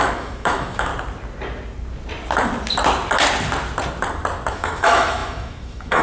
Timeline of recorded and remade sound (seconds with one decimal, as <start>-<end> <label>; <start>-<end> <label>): 0.0-0.9 remade; 0.9-4.5 recorded; 4.5-6.0 remade